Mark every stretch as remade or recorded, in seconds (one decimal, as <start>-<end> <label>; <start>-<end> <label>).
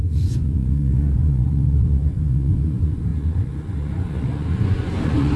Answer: 0.0-5.4 remade